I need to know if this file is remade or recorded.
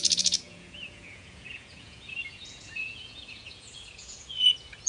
remade